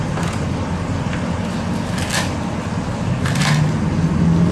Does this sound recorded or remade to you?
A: recorded